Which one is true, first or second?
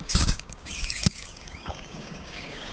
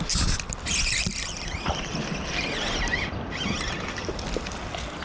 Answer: second